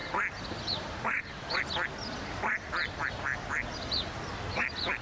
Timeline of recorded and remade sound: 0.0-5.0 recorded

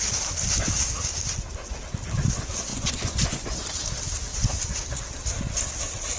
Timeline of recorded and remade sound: 0.0-2.7 recorded; 2.7-3.7 remade; 3.7-6.2 recorded

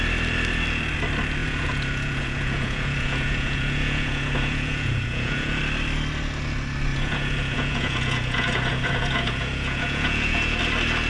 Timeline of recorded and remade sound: 0.0-1.4 recorded; 1.4-5.6 remade; 5.6-6.9 recorded; 6.9-10.6 remade; 10.6-11.1 recorded

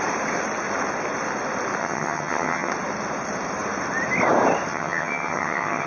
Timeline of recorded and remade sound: 0.0-1.8 recorded; 1.8-2.7 remade; 2.7-4.7 recorded; 4.7-5.9 remade